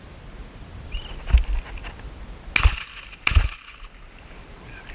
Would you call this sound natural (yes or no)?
yes